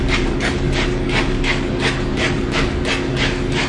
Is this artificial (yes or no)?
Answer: yes